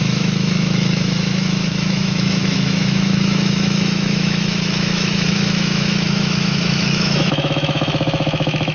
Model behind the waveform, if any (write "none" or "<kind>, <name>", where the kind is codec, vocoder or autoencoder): autoencoder, DAC-VAE